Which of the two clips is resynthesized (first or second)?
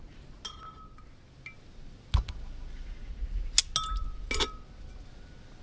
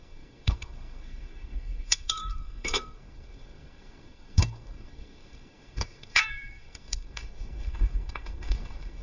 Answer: second